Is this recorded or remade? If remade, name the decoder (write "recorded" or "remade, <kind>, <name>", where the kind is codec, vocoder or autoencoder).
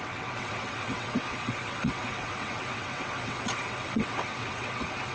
remade, vocoder, WaveNeXt